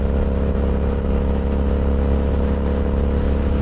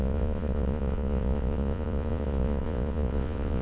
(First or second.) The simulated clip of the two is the second